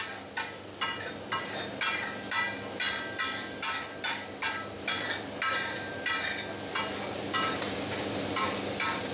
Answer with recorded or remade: recorded